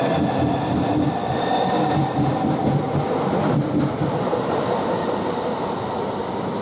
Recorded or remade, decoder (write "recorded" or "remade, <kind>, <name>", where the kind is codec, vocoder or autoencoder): remade, vocoder, BigVGAN v2